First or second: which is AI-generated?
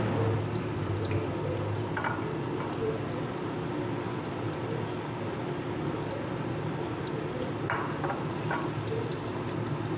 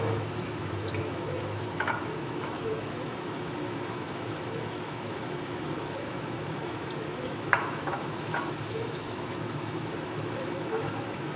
second